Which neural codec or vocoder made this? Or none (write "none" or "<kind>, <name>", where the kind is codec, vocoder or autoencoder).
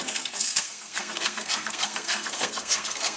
codec, SNAC